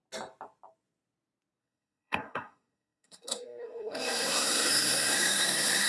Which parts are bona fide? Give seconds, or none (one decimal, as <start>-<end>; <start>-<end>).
0.0-1.6